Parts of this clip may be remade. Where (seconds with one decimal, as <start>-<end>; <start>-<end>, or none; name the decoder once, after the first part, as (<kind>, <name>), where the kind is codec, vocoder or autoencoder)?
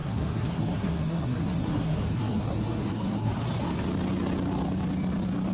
0.0-3.3 (codec, SNAC)